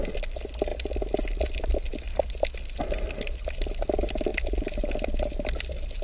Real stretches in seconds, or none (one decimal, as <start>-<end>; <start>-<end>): 0.0-6.0